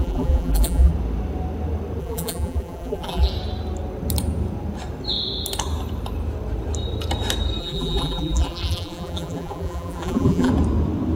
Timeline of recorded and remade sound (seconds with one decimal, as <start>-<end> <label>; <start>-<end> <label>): 0.0-0.9 remade; 0.9-2.0 recorded; 2.0-3.3 remade; 3.3-7.6 recorded; 7.6-10.5 remade; 10.5-11.2 recorded